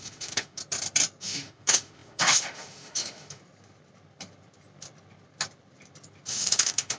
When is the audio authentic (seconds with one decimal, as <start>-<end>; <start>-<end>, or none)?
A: 0.6-1.2; 3.4-6.3